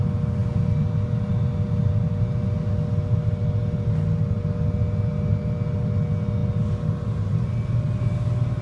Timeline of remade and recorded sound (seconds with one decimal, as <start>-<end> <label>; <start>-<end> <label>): 0.0-8.6 recorded